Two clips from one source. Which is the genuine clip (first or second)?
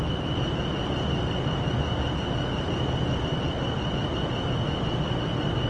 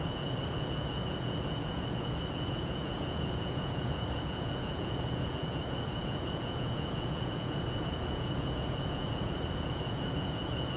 first